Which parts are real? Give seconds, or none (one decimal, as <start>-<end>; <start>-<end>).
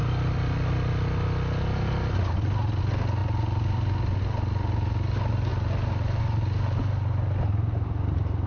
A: 0.0-8.5